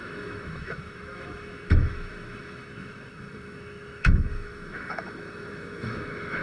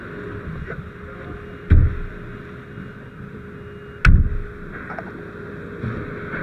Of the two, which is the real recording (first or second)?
second